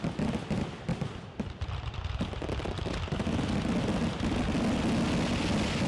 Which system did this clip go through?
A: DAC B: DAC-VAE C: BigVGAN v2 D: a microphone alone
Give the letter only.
D